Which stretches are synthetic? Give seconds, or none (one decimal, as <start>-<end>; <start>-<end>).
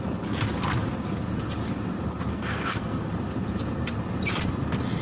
2.3-3.1